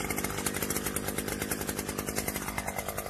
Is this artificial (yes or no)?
no